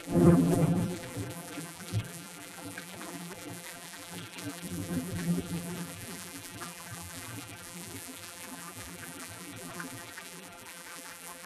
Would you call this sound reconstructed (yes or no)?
yes